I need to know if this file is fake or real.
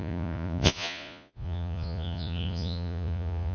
fake